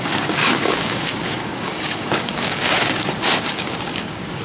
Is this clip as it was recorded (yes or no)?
no